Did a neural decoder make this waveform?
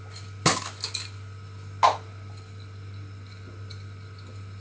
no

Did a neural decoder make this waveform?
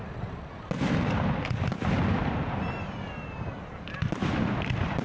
no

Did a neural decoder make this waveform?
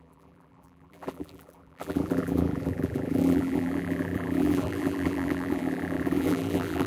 yes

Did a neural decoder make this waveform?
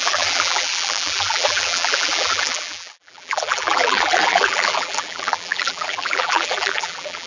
yes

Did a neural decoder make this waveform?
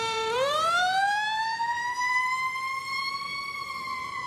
yes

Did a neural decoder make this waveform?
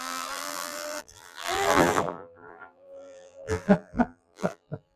yes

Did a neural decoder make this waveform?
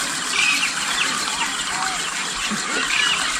yes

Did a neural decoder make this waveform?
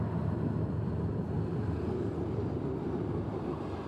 yes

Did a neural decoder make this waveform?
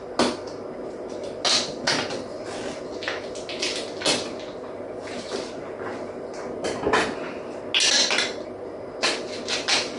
no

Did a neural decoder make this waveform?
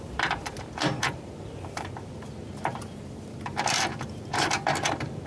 yes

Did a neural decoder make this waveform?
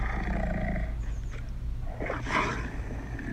no